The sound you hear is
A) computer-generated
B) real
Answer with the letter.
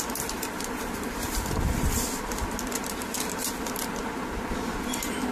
B